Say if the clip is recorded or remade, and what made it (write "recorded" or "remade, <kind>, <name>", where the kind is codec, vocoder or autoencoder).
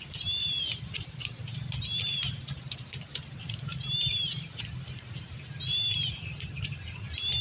remade, vocoder, BigVGAN v2